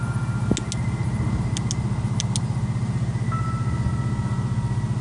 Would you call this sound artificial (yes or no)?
no